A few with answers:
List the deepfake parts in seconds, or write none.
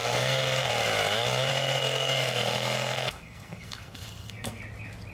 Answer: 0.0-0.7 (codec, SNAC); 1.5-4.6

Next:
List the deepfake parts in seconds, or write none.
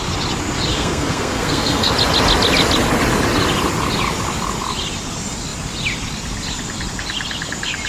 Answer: 0.7-1.9 (codec, SNAC)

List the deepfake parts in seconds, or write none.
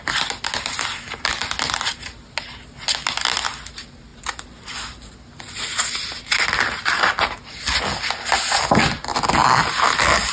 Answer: none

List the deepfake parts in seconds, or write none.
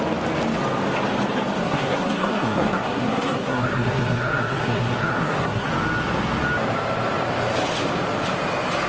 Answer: 1.6-5.7 (codec, SNAC)